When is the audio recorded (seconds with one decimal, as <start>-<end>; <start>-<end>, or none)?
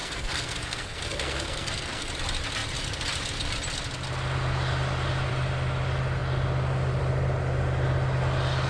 2.1-8.7